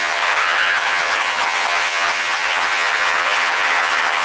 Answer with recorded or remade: remade